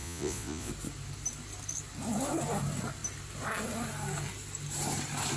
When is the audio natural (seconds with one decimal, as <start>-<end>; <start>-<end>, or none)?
0.7-5.4